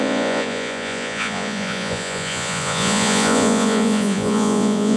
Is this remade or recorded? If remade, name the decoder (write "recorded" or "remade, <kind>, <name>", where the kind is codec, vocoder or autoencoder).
remade, vocoder, Vocos